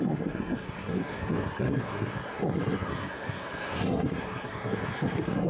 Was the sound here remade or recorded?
remade